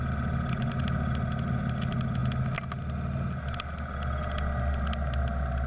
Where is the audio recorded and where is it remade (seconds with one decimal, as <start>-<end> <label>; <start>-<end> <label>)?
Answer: 0.0-5.7 recorded